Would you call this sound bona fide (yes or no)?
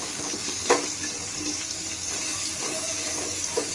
no